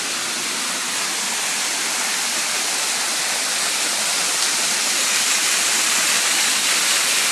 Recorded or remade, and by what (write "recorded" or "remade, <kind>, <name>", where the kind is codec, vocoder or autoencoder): recorded